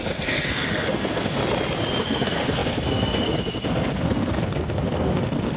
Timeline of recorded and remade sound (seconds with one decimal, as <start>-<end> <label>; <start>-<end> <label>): 0.0-1.4 remade; 1.4-2.0 recorded; 2.0-5.6 remade